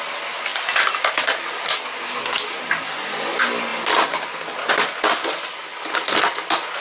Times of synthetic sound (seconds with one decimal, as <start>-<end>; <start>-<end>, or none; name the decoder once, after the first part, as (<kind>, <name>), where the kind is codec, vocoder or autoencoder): none